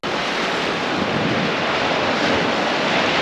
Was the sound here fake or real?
real